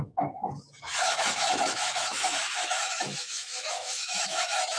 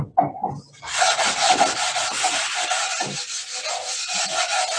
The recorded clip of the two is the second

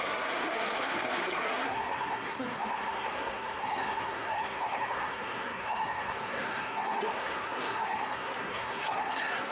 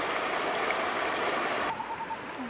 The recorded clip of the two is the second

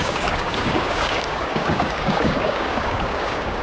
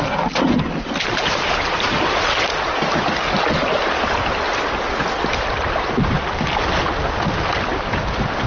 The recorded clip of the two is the second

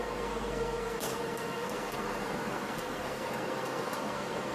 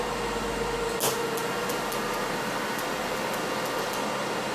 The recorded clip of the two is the second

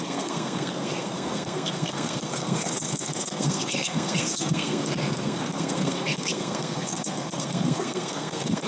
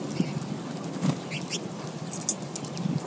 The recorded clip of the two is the second